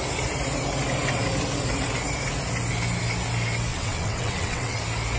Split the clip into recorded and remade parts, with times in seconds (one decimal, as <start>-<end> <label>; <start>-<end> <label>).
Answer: 0.0-3.7 recorded; 3.7-4.8 remade; 4.8-5.2 recorded